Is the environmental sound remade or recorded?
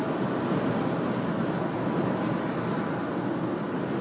recorded